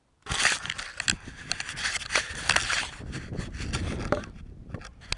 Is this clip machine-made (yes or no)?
no